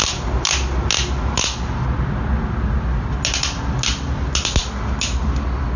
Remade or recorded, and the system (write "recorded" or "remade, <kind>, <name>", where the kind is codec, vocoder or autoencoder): recorded